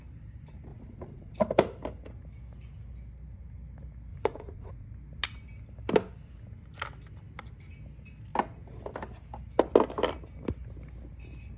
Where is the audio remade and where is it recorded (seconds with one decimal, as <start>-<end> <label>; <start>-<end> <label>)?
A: 0.0-0.7 recorded; 0.7-1.3 remade; 1.3-4.1 recorded; 4.1-4.9 remade; 4.9-11.6 recorded